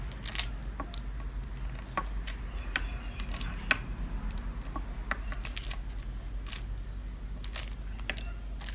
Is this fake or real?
real